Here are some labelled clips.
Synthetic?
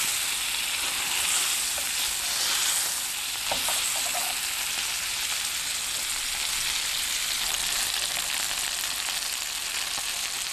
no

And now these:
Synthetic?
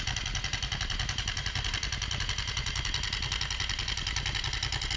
no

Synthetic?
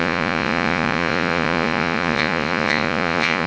yes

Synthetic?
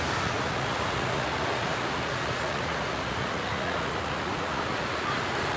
yes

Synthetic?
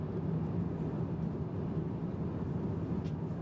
no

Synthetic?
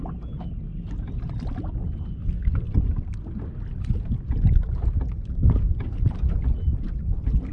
no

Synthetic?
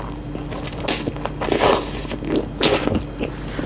no